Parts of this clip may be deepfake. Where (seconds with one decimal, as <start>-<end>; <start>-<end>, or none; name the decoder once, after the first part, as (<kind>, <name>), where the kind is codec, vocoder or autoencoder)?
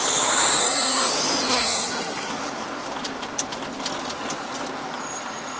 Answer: 0.6-1.1 (codec, SNAC); 1.5-2.3